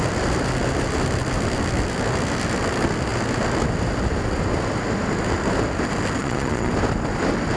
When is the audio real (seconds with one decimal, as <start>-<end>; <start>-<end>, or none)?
0.0-6.2; 6.7-7.6